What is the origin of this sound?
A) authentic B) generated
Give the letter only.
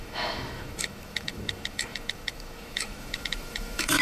B